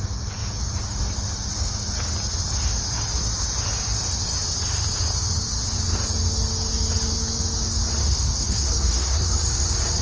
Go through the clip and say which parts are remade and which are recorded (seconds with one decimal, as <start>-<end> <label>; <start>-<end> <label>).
0.0-8.0 recorded; 8.0-9.3 remade; 9.3-10.0 recorded